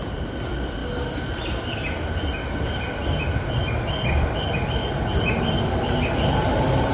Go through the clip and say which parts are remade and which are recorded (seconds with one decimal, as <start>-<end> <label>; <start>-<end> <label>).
0.0-6.9 recorded